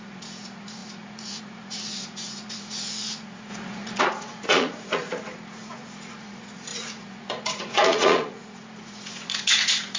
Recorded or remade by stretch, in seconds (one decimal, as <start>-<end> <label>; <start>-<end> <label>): 0.0-10.0 remade